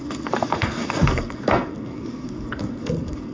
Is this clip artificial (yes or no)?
yes